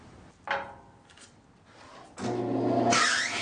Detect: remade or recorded recorded